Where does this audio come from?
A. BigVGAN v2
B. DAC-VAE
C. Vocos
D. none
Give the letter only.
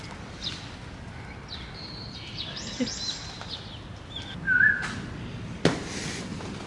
D